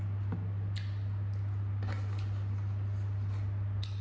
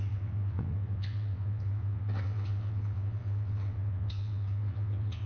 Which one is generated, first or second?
second